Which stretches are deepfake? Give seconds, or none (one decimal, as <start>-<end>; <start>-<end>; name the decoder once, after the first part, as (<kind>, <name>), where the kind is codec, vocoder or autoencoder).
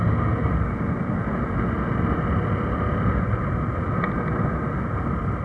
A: none